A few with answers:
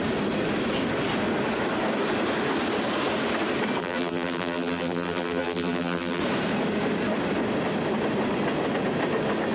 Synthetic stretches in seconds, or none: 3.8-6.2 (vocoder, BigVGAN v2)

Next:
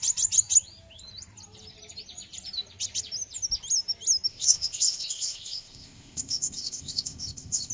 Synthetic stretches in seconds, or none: 4.3-7.7 (codec, ZipCodec)

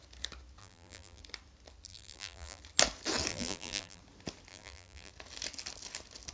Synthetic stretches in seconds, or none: 0.6-1.2 (vocoder, BigVGAN v2); 1.9-2.6; 3.3-4.0; 4.5-5.1

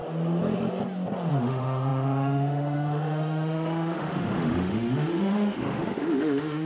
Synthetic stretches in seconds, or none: 1.3-6.7 (autoencoder, DAC-VAE)

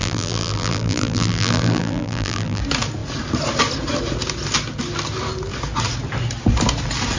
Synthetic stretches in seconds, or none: 0.0-2.6 (vocoder, BigVGAN v2)

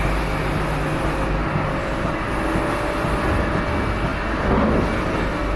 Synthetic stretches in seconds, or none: none